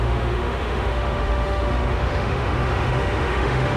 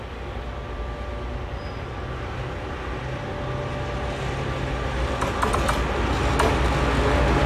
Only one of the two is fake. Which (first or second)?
first